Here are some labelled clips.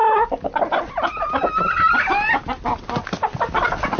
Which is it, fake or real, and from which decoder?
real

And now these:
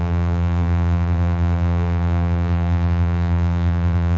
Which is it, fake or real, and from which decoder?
fake, vocoder, BigVGAN v2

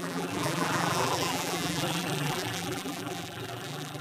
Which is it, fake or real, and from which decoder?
fake, vocoder, BigVGAN v2